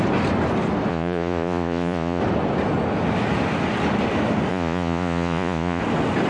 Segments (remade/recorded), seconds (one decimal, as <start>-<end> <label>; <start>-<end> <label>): 0.0-0.9 recorded; 0.9-2.2 remade; 2.2-4.5 recorded; 4.5-5.8 remade; 5.8-6.3 recorded